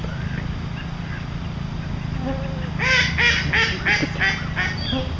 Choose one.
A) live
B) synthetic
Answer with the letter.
A